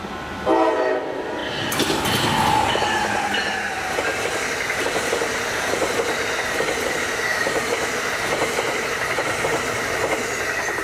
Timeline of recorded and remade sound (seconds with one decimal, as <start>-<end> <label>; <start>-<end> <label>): 0.0-10.8 recorded

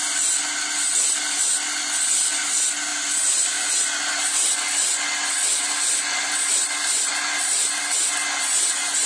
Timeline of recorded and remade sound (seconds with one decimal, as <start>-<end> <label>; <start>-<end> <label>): 0.0-9.1 recorded

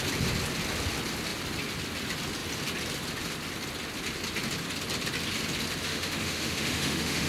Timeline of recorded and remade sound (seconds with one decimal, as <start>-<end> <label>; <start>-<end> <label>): 0.0-5.9 recorded; 5.9-7.3 remade

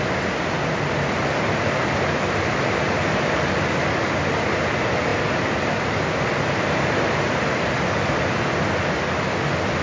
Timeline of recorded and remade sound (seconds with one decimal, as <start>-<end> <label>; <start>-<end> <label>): 0.0-9.8 recorded

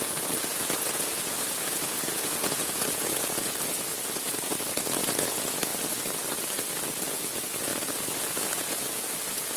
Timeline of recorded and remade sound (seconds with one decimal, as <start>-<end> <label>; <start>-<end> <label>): 0.0-5.7 remade; 5.7-6.7 recorded; 6.7-9.6 remade